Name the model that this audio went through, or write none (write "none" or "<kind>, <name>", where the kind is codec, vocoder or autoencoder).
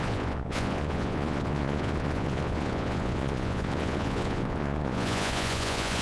vocoder, Vocos